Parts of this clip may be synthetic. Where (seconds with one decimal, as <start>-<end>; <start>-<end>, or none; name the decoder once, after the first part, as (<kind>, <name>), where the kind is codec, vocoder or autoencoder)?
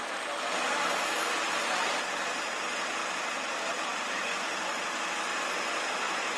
4.2-4.8 (vocoder, Vocos)